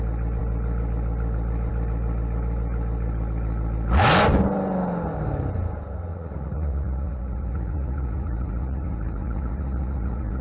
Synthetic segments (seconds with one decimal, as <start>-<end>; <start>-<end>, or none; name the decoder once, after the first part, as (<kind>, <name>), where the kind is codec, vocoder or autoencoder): 6.1-10.4 (vocoder, Vocos)